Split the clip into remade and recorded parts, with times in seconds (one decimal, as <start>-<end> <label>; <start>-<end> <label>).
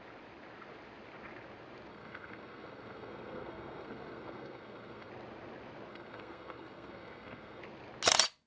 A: 0.0-1.9 recorded; 1.9-5.1 remade; 5.1-5.9 recorded; 5.9-7.6 remade; 7.6-8.5 recorded